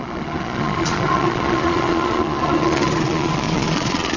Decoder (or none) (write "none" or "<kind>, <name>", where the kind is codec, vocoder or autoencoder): vocoder, Vocos